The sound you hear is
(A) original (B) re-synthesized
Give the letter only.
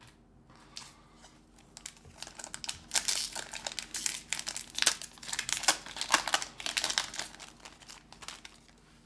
A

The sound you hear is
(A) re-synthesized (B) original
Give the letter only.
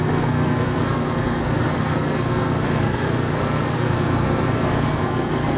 A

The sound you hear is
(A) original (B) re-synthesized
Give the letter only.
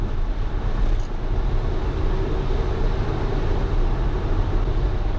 A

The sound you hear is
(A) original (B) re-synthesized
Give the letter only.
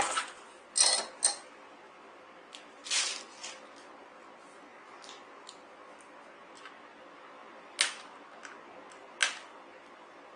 A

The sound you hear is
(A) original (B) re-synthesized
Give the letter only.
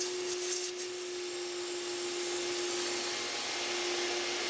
A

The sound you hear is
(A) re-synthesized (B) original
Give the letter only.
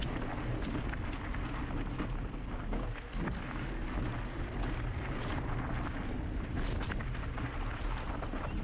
B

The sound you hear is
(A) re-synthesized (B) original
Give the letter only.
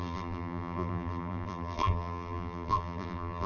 A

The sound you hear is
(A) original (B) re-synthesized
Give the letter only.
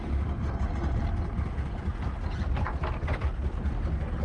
A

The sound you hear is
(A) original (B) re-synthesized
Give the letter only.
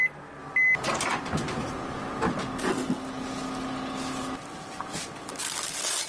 A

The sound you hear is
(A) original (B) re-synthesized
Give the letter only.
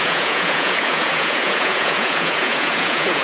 B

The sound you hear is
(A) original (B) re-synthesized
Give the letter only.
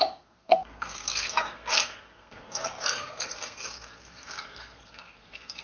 B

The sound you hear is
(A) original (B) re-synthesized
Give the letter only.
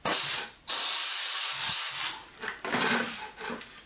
A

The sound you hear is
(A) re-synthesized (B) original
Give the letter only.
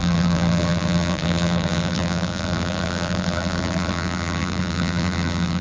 A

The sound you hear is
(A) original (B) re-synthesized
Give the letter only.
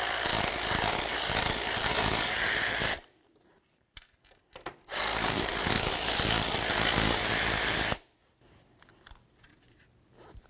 A